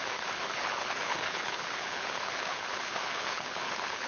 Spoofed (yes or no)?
yes